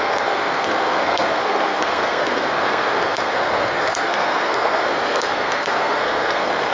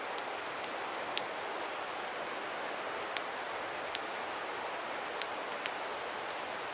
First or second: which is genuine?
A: second